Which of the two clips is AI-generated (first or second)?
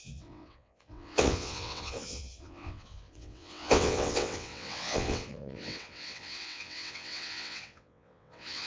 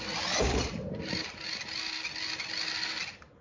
first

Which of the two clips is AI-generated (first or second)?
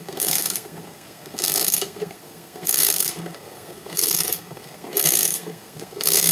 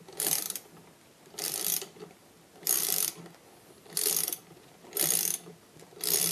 first